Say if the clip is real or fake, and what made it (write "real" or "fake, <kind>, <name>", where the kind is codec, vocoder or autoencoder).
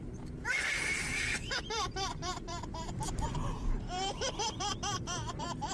fake, vocoder, BigVGAN v2